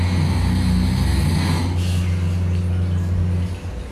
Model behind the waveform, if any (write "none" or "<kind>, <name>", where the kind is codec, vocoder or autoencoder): none